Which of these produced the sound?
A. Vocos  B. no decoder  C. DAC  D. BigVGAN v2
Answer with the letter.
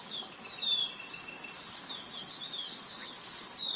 B